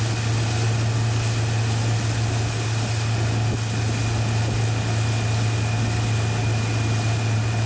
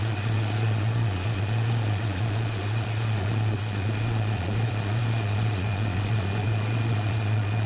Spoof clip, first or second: second